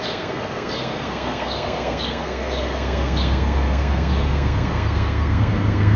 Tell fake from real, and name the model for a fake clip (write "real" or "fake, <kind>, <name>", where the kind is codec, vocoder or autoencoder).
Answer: fake, codec, SNAC